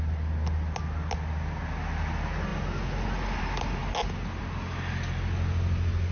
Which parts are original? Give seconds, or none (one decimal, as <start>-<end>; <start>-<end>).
0.0-6.1